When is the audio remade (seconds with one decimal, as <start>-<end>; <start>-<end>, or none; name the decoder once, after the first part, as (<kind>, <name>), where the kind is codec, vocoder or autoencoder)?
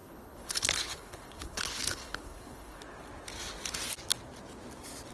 0.0-2.8 (codec, HILCodec)